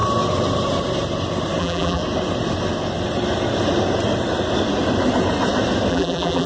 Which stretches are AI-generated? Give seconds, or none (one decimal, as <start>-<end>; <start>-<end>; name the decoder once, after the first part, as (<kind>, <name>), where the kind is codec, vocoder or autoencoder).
1.6-2.0 (vocoder, BigVGAN v2); 5.9-6.5